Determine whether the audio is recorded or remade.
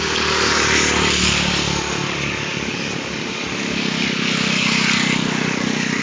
remade